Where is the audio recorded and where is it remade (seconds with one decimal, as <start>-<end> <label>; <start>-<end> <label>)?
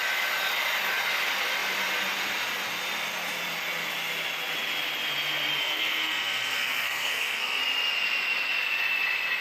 0.0-5.6 recorded; 5.6-7.6 remade; 7.6-9.4 recorded